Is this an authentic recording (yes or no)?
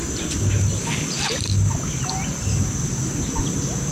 yes